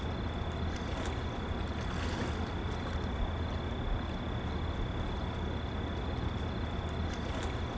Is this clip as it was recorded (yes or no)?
yes